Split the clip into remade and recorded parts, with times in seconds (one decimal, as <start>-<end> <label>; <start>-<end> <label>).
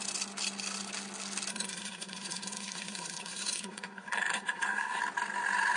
0.0-1.5 recorded; 1.5-5.0 remade; 5.0-5.8 recorded